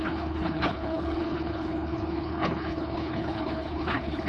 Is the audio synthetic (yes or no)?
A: yes